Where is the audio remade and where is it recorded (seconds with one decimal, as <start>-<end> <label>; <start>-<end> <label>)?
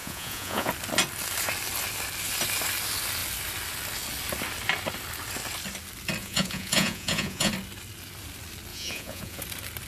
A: 0.0-0.7 remade; 0.7-6.2 recorded; 6.2-7.5 remade; 7.5-8.7 recorded; 8.7-9.4 remade; 9.4-9.9 recorded